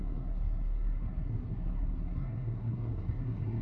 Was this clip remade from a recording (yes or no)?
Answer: yes